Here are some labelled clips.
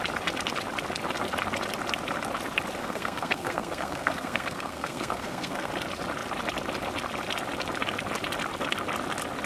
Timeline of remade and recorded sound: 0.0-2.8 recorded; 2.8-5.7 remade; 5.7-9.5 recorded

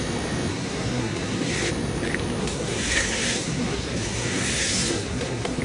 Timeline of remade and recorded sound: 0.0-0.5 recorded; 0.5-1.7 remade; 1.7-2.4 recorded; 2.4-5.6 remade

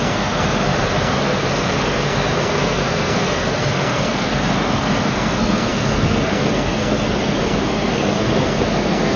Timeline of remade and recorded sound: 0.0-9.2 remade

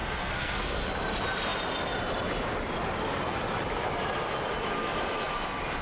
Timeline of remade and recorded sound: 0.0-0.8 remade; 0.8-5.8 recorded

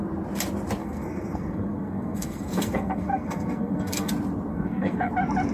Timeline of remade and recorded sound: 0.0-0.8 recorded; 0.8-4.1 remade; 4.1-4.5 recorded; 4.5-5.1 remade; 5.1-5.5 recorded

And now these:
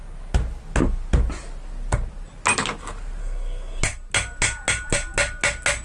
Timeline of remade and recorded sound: 0.0-3.2 recorded; 3.2-3.8 remade; 3.8-5.8 recorded